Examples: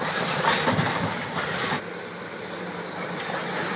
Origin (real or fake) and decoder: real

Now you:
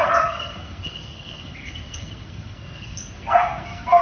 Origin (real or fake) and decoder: fake, codec, SNAC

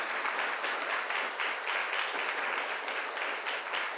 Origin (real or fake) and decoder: real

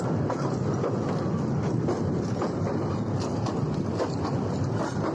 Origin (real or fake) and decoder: real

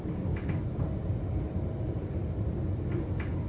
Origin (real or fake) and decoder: real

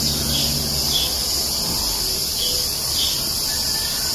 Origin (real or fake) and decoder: real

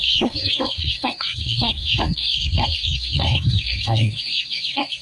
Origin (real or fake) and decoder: fake, codec, SNAC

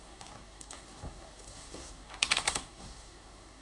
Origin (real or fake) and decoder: fake, codec, SNAC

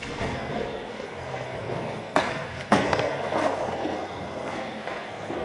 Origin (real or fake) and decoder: fake, codec, SNAC